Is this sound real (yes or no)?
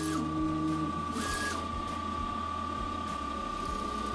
yes